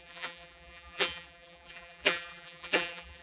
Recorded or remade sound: remade